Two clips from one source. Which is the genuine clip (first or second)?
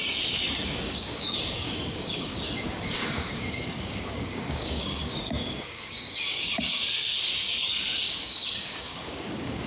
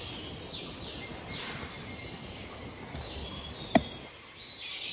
second